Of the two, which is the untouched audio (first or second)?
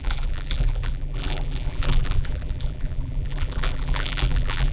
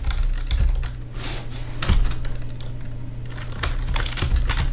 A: second